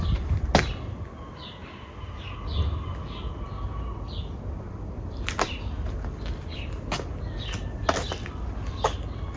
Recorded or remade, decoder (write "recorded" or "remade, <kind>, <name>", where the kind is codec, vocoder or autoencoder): recorded